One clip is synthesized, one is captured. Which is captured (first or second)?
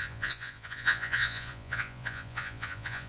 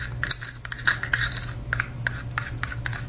second